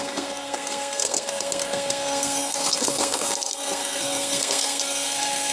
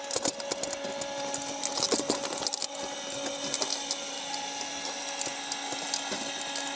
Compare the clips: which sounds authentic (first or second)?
second